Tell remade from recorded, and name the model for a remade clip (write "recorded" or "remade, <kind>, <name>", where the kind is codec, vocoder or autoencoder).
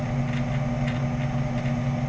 recorded